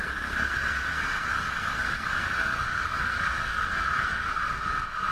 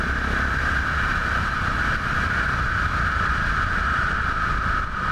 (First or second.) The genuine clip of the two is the second